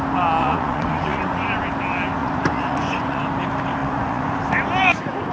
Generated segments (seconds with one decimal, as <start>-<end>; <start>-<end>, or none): 0.4-1.7; 2.2-3.2; 3.8-4.4